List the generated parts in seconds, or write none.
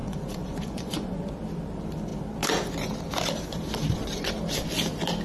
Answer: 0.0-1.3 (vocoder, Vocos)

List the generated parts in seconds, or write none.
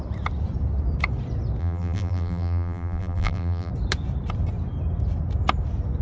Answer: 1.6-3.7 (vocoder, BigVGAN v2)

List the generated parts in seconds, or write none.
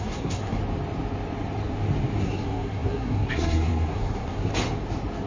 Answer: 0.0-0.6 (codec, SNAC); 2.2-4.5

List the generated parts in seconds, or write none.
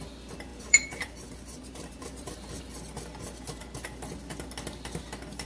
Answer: 0.5-2.6 (vocoder, BigVGAN v2)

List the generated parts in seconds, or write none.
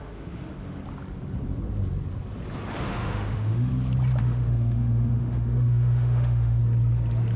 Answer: 0.0-0.8 (autoencoder, DAC-VAE); 2.8-3.7; 4.2-6.6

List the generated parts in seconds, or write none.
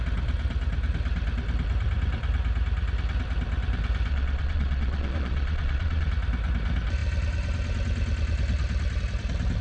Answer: 4.1-6.1 (vocoder, Vocos)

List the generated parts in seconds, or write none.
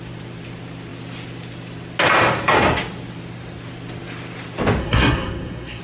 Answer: 4.8-5.8 (codec, SNAC)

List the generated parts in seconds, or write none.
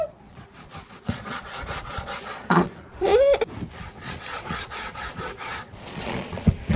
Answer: 0.0-3.1 (vocoder, Vocos); 3.8-6.8